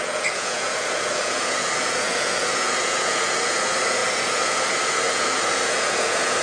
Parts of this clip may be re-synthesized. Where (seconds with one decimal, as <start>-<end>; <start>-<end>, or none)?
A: 0.0-6.4